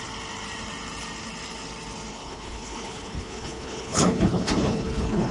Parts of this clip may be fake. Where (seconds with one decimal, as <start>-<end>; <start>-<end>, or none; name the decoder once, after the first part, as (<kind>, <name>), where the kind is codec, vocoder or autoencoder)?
2.1-5.3 (codec, HILCodec)